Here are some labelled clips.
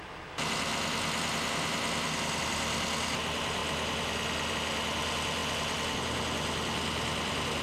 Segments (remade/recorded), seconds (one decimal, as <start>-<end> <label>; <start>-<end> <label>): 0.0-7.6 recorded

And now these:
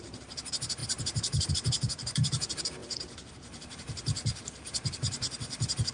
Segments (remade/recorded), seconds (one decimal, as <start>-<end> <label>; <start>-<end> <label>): 0.0-2.8 remade; 2.8-3.3 recorded; 3.3-5.9 remade

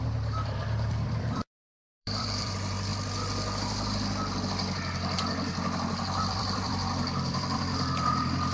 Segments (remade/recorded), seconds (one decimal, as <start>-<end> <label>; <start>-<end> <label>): 0.0-2.9 remade; 2.9-6.2 recorded; 6.2-8.5 remade